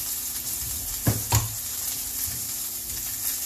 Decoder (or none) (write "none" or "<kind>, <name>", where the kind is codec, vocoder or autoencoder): none